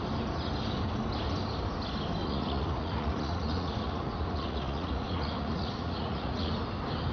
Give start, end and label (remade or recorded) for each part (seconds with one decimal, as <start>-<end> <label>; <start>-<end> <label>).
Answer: 0.0-2.2 recorded; 2.2-6.5 remade; 6.5-7.1 recorded